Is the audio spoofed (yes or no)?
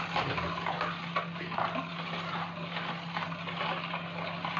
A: no